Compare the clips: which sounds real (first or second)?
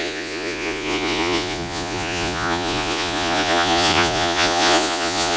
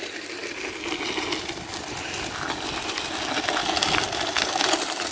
second